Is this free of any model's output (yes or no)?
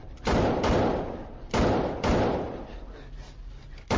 yes